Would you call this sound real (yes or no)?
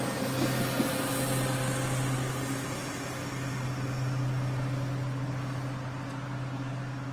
yes